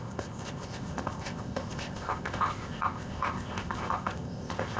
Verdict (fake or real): fake